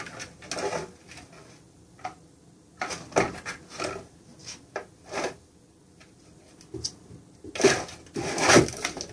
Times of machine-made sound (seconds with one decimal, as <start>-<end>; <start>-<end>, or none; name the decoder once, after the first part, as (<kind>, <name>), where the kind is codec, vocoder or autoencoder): none

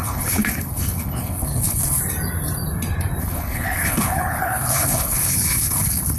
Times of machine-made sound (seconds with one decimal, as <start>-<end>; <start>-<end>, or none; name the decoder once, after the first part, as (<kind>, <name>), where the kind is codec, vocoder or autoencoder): 0.0-2.0 (codec, HILCodec); 3.2-6.2